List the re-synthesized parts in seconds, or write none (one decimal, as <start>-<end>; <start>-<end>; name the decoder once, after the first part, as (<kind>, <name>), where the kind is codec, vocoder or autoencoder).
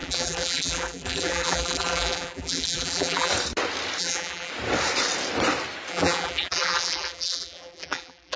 0.0-3.3 (vocoder, BigVGAN v2); 4.0-4.5; 5.9-8.4